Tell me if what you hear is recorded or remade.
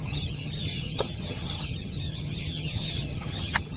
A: remade